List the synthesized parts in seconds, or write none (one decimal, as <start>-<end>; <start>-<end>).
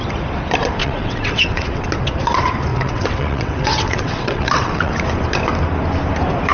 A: 0.8-1.9; 2.7-4.9